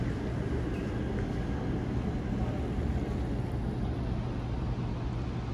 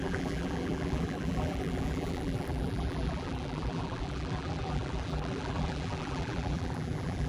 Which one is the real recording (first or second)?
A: first